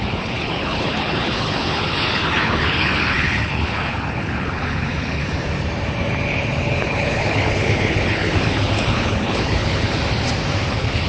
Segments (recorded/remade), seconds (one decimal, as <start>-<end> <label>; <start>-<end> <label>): 0.0-5.2 remade; 5.2-6.6 recorded; 6.6-10.0 remade; 10.0-10.7 recorded; 10.7-11.1 remade